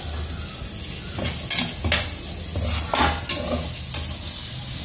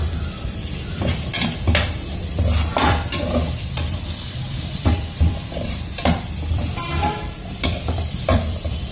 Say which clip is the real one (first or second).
first